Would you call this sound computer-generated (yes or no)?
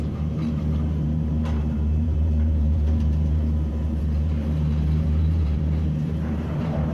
yes